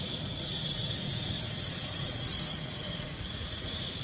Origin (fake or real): fake